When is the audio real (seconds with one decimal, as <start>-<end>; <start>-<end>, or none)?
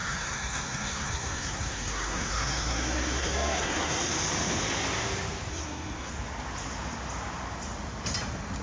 4.0-5.5; 6.1-8.6